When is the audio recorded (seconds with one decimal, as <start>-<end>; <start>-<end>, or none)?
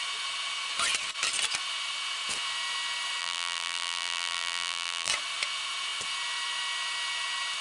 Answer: 0.0-3.2; 5.1-7.6